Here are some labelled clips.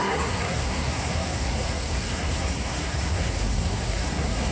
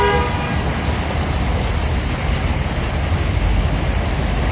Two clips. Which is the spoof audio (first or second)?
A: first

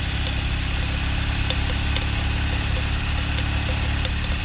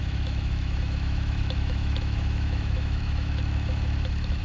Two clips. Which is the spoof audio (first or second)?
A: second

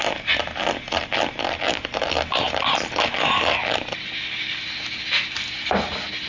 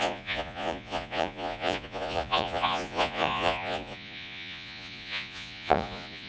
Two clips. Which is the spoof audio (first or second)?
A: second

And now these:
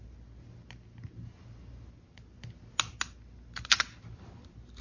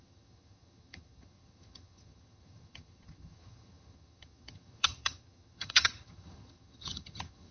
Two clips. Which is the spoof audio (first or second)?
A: second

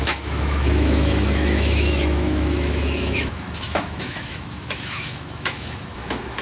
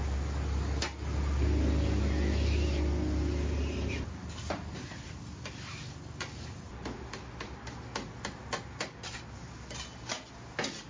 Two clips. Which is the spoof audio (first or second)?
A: first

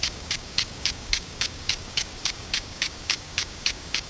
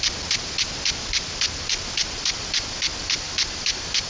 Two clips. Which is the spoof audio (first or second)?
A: first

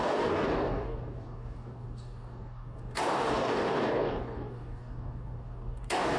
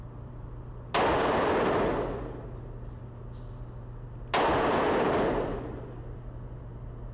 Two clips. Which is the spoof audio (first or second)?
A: first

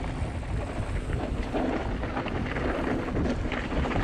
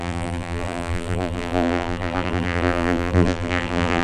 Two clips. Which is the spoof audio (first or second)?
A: second